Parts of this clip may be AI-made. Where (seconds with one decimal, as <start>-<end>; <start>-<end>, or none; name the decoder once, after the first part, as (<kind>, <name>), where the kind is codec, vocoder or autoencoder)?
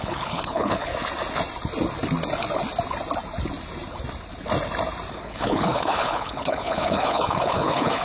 0.0-0.9 (codec, HILCodec); 5.1-8.0